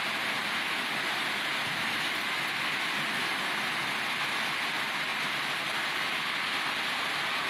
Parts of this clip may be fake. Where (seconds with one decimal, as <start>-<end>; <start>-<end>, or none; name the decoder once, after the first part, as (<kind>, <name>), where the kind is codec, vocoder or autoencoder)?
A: none

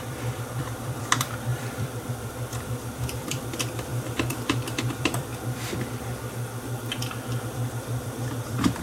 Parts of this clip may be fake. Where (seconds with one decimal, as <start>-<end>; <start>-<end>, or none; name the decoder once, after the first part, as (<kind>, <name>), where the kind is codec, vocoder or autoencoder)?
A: 0.0-5.3 (vocoder, BigVGAN v2); 7.4-8.8

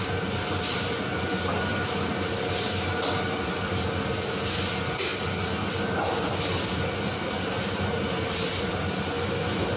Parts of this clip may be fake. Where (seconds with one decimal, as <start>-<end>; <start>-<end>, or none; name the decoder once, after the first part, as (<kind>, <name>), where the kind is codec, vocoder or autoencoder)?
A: 1.7-2.6 (vocoder, BigVGAN v2)

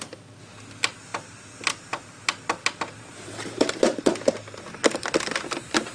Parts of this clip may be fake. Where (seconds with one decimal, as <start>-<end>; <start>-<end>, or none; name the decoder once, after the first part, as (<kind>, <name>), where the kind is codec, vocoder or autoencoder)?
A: none

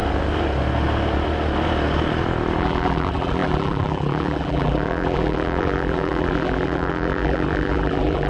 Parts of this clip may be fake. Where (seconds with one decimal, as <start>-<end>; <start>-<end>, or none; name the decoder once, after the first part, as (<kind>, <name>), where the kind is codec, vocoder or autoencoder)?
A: 2.6-8.3 (vocoder, BigVGAN v2)

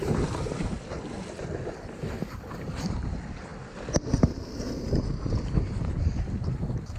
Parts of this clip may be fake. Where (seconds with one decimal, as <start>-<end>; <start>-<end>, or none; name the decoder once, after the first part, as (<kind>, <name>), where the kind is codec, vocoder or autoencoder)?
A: none

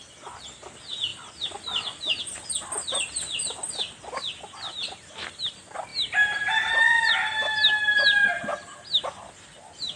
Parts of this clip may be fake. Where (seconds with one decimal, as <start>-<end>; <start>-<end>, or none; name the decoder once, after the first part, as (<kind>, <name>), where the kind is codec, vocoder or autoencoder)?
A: none

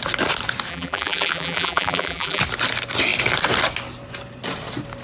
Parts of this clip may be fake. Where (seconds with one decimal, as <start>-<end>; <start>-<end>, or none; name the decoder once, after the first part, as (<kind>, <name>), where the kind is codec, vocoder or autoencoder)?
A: 0.7-2.4 (vocoder, BigVGAN v2)